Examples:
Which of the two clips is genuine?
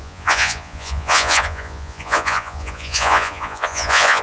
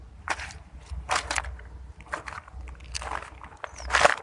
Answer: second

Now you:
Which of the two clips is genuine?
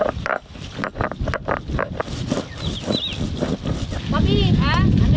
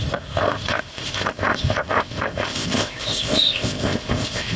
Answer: first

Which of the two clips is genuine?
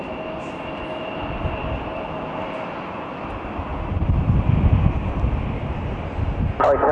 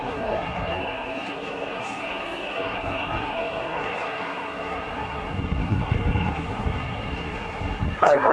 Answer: first